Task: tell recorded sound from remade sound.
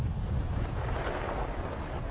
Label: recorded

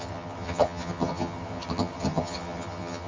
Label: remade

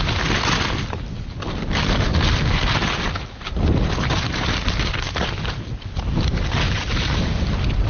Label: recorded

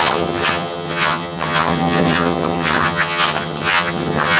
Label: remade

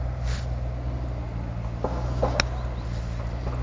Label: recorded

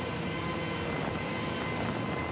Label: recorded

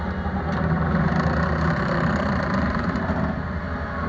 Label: recorded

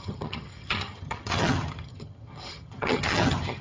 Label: remade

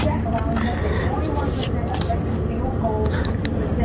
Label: recorded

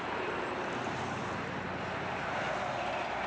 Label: recorded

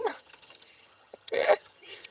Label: remade